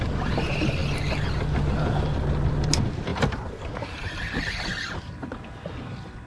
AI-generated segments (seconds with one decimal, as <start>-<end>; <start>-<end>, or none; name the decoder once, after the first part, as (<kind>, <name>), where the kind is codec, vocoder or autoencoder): none